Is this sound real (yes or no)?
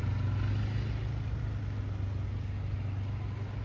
yes